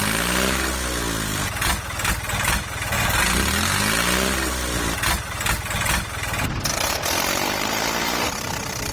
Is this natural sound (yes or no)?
yes